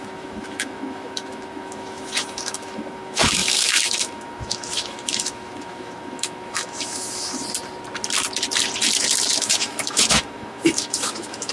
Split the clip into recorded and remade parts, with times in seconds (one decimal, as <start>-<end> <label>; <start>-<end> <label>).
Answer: 0.0-7.3 remade; 7.3-9.4 recorded; 9.4-11.5 remade